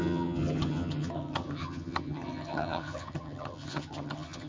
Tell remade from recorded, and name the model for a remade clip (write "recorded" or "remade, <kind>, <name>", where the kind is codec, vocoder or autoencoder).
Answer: remade, vocoder, HiFi-GAN